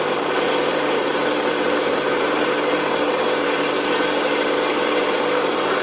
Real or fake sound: fake